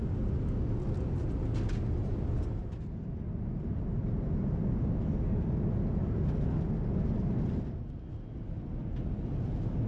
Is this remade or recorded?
recorded